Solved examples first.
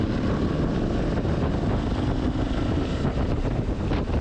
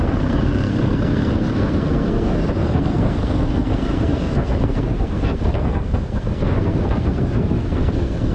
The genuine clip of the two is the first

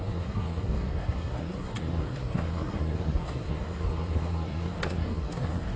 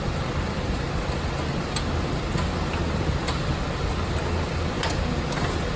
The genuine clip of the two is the second